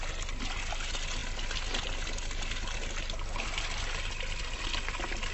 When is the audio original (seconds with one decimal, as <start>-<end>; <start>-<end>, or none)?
0.0-5.3